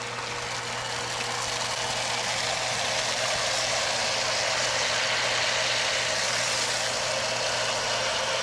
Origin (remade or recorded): recorded